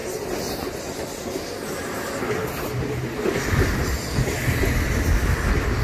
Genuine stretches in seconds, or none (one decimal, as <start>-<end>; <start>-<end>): 0.0-5.8